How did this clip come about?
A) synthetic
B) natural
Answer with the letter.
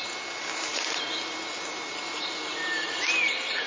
B